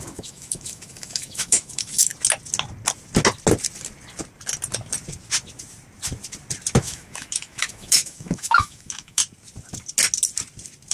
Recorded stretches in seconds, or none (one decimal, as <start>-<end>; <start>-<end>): 2.1-6.8; 9.2-10.9